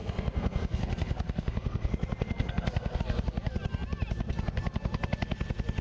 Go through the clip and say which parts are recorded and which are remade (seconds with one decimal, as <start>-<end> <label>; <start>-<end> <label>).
0.0-3.0 remade; 3.0-5.8 recorded